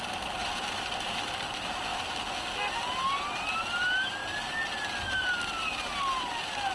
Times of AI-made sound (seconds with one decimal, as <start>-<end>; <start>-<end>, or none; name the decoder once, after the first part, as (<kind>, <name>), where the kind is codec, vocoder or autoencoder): 0.4-1.1 (vocoder, BigVGAN v2); 1.9-2.6